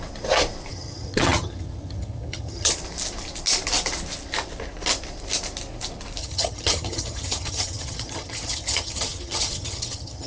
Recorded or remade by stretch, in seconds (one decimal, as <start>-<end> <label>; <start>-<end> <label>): 0.0-0.7 recorded; 0.7-2.7 remade; 2.7-6.2 recorded; 6.2-10.3 remade